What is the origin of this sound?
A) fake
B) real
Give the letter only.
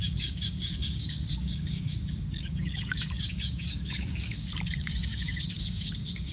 A